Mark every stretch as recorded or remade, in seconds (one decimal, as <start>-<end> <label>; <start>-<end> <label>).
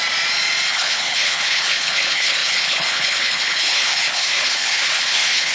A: 0.0-0.7 recorded; 0.7-5.5 remade